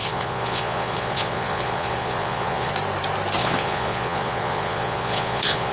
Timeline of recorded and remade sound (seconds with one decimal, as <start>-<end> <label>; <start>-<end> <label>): 0.0-2.7 remade; 2.7-3.4 recorded; 3.4-5.7 remade